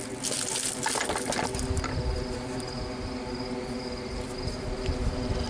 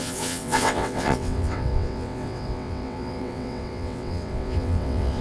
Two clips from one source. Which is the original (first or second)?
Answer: first